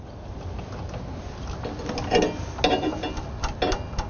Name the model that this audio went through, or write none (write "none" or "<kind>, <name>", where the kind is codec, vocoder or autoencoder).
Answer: none